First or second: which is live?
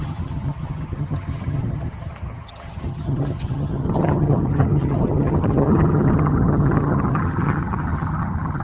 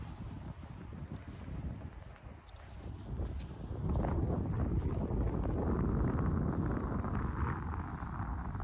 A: second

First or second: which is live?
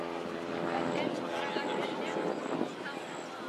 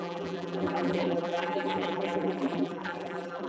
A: first